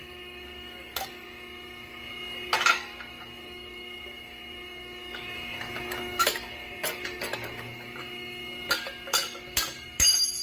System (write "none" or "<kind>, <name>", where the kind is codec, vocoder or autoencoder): codec, DAC